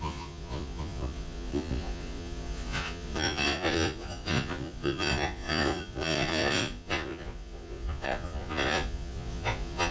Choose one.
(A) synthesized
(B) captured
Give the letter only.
A